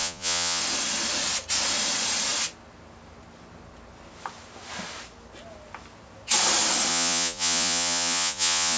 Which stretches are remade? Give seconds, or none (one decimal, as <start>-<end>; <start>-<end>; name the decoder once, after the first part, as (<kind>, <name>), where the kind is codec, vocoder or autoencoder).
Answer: 0.0-0.6 (vocoder, Vocos); 6.9-8.8